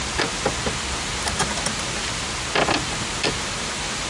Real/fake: real